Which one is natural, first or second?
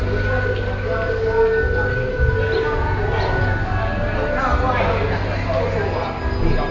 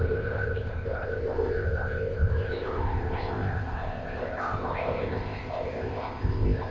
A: first